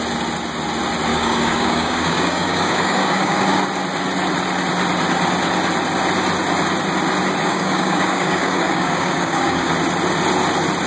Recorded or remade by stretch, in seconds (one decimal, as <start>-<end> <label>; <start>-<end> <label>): 0.0-1.1 recorded; 1.1-3.6 remade; 3.6-7.4 recorded; 7.4-9.7 remade; 9.7-10.9 recorded